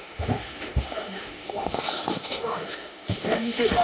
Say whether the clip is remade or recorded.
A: remade